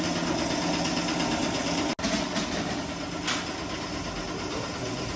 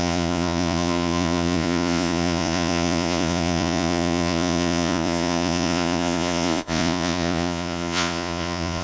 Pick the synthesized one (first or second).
second